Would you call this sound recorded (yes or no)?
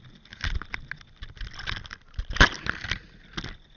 yes